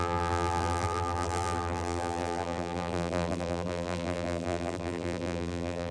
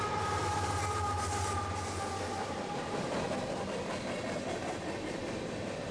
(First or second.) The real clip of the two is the second